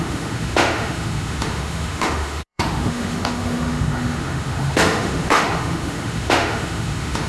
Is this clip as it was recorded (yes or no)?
no